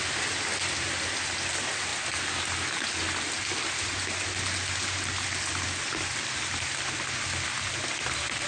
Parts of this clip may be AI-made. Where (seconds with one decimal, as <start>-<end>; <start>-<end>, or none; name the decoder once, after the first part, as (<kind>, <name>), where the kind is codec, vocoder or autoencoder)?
none